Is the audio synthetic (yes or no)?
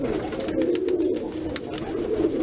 no